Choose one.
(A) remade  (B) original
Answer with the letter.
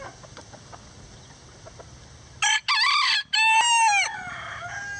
B